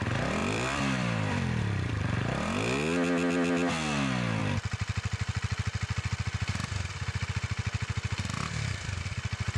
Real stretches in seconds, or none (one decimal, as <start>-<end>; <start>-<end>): 0.0-0.4; 2.2-4.4; 9.0-9.6